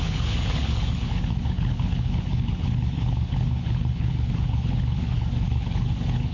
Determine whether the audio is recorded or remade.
remade